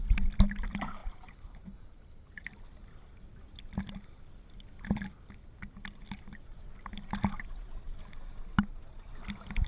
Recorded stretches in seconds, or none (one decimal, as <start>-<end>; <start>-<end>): 0.0-1.0; 2.5-9.7